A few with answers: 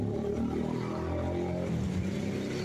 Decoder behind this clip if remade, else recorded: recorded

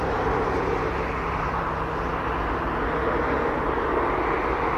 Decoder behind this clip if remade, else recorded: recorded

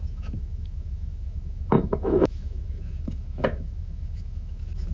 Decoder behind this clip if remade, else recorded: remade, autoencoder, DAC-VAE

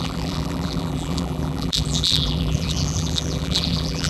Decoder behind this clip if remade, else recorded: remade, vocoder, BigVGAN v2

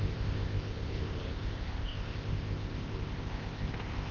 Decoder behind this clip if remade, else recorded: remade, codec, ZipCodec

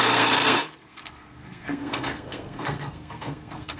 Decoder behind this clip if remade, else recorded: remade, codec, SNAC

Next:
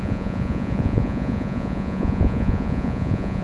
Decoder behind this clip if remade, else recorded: remade, vocoder, Vocos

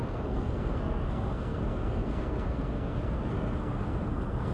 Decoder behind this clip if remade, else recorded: remade, codec, SNAC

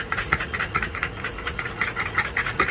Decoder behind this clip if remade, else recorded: remade, vocoder, Vocos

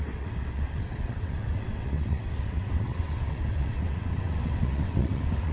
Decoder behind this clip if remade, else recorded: remade, vocoder, WaveNeXt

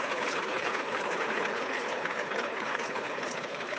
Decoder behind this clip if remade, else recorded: remade, codec, HILCodec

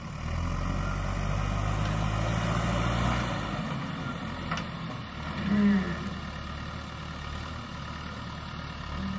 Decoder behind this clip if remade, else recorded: recorded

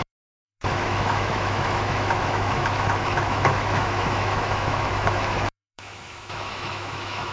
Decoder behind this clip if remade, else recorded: remade, autoencoder, DAC-VAE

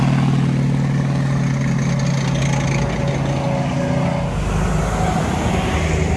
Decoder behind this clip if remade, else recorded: recorded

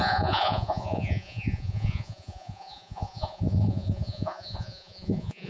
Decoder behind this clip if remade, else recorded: remade, vocoder, Vocos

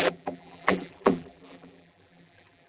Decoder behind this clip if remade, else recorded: remade, vocoder, BigVGAN v2